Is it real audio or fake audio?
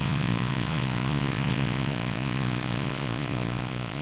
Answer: fake